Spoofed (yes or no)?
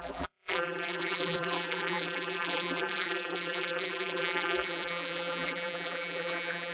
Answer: yes